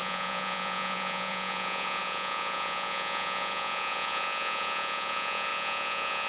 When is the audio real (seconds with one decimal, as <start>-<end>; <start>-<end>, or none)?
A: none